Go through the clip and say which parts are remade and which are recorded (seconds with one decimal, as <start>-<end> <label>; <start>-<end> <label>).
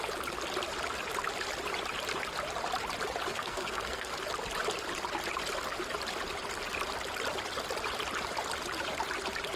0.0-3.3 recorded; 3.3-4.1 remade; 4.1-9.6 recorded